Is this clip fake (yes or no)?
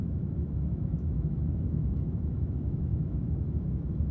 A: yes